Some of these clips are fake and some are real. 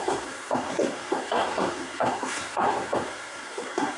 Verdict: fake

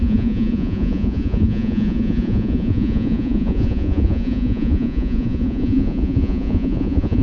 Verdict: fake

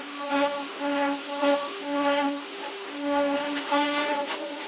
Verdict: fake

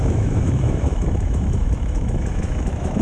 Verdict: fake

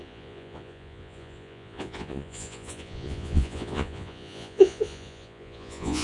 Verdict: fake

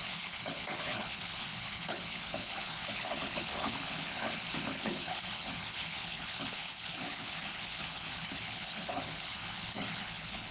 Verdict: fake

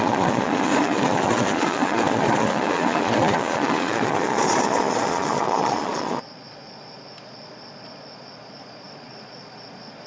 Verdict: fake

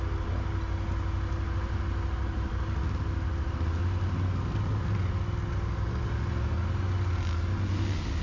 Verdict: real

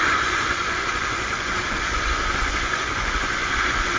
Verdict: fake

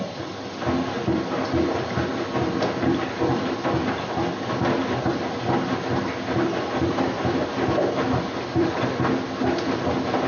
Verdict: real